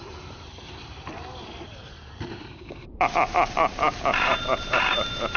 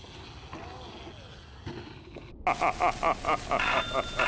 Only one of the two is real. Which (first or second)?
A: second